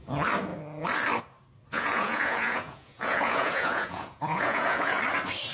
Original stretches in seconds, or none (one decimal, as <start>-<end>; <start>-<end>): 0.0-1.7; 5.0-5.5